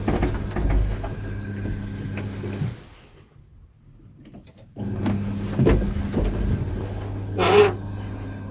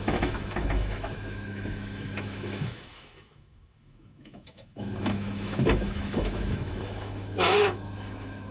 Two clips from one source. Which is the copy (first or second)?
second